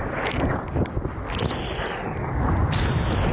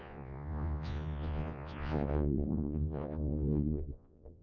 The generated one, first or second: second